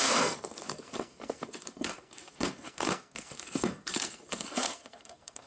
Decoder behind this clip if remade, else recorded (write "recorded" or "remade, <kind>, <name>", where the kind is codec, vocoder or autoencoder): remade, codec, SNAC